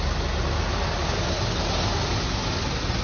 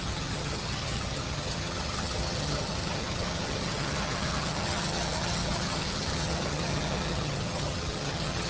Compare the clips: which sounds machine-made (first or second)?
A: second